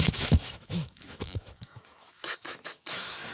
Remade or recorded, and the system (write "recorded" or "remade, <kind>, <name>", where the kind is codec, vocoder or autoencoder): remade, autoencoder, DAC-VAE